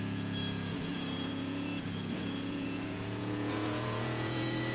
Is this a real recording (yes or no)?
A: no